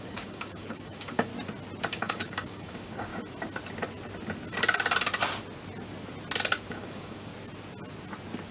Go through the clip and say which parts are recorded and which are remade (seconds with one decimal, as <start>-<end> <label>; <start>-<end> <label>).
0.0-1.3 remade; 1.3-1.9 recorded; 1.9-3.1 remade; 3.1-6.7 recorded; 6.7-7.3 remade; 7.3-8.5 recorded